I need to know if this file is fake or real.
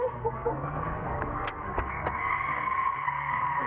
fake